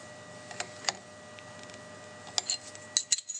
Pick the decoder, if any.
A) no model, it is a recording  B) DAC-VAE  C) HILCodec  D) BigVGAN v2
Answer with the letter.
A